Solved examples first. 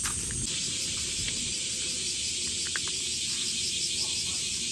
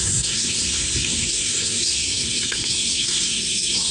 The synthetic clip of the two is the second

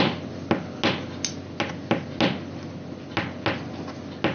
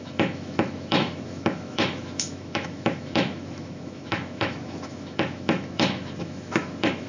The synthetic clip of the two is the second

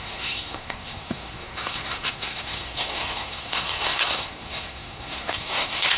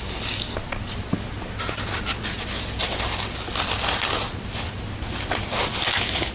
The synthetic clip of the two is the first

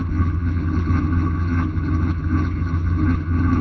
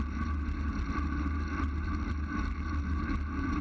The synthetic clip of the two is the first